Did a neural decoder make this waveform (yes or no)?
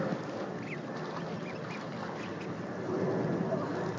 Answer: no